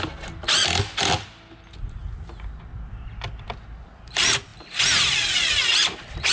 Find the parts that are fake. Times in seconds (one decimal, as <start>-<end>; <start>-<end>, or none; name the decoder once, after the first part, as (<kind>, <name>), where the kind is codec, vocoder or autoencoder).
none